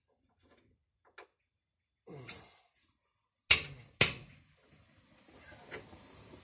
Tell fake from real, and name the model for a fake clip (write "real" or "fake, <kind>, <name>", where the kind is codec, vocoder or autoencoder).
real